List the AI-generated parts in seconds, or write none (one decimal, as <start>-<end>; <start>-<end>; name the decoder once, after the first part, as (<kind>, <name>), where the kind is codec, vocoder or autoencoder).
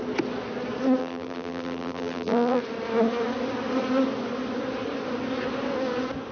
1.0-2.6 (vocoder, BigVGAN v2)